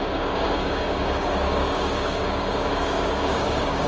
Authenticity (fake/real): fake